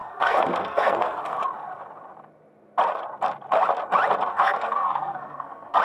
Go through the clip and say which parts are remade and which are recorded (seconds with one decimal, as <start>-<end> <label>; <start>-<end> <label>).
0.0-1.4 remade; 1.4-4.3 recorded; 4.3-5.8 remade